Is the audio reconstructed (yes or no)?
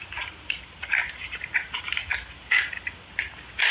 no